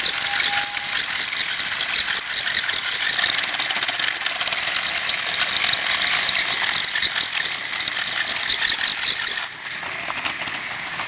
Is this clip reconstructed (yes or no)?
no